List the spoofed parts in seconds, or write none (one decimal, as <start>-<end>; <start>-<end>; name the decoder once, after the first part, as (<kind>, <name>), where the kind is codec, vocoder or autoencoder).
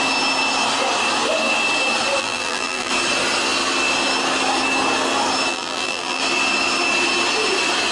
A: 2.2-2.9 (vocoder, BigVGAN v2); 5.5-6.2